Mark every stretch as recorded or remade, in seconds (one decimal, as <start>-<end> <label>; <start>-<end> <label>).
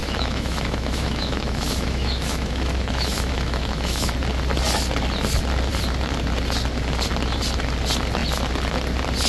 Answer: 0.0-4.1 remade; 4.1-9.3 recorded